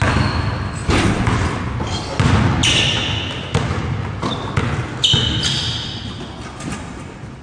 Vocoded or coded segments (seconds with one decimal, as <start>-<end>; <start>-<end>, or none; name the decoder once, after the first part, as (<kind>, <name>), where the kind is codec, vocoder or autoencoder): none